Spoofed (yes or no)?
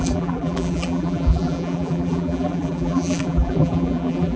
yes